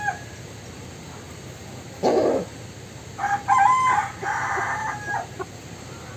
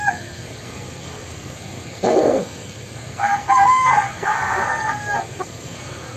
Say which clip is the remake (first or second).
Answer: second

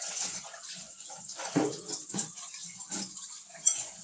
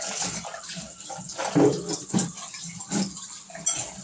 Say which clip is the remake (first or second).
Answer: first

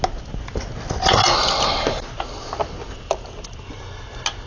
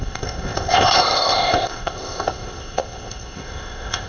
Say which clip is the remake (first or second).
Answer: second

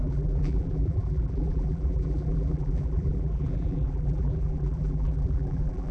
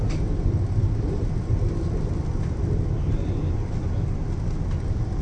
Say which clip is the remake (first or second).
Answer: first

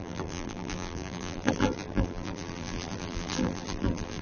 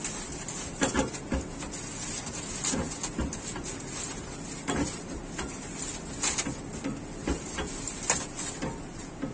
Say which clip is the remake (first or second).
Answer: first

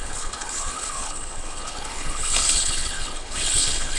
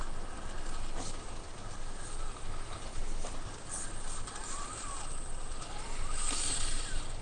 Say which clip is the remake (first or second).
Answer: first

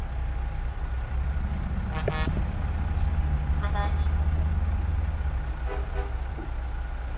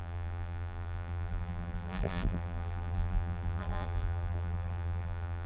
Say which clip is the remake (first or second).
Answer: second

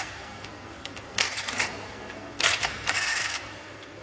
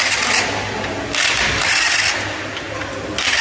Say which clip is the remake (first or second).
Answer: first